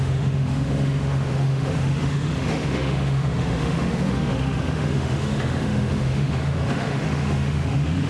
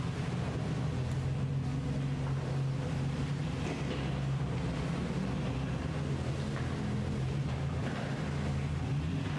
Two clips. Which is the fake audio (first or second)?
first